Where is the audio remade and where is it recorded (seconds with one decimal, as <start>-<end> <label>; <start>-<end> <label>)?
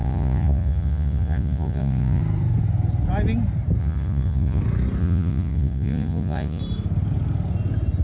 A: 0.0-2.2 remade; 2.2-3.8 recorded; 3.8-4.6 remade; 4.6-5.0 recorded; 5.0-6.6 remade; 6.6-8.0 recorded